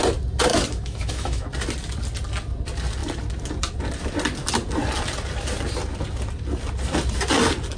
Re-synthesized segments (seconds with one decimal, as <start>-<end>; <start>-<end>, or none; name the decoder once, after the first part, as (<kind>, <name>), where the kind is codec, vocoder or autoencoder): 0.5-1.5 (autoencoder, DAC-VAE)